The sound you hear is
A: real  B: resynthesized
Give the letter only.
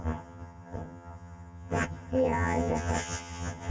B